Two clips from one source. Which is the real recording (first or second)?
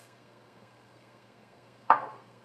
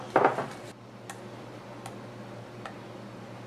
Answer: second